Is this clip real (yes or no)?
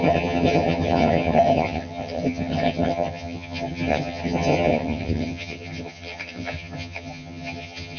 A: no